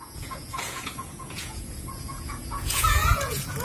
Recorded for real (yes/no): no